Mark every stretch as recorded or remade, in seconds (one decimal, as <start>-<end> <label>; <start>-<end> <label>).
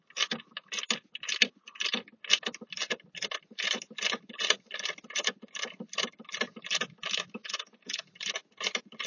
0.0-7.4 recorded; 7.4-8.0 remade; 8.0-9.1 recorded